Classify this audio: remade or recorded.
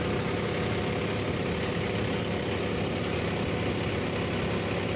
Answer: recorded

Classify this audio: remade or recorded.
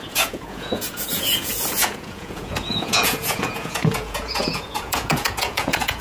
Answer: remade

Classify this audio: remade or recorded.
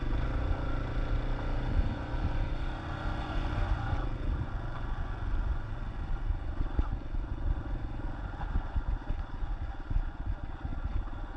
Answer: remade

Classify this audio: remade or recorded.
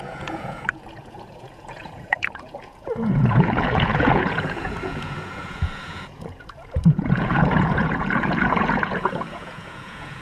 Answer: remade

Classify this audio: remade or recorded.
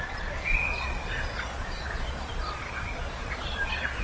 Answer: remade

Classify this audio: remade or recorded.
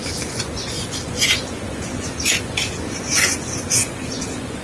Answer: remade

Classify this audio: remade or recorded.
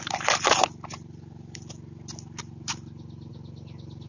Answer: recorded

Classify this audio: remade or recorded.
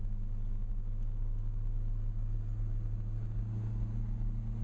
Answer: recorded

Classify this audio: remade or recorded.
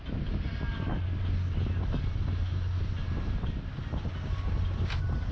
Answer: recorded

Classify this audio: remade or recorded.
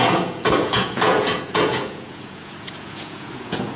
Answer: remade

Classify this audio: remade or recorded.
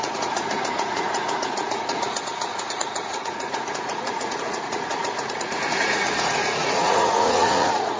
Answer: remade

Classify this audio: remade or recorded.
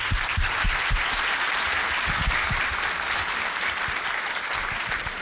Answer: recorded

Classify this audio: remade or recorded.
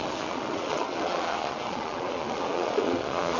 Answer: remade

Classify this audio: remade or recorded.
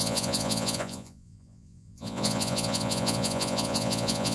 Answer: remade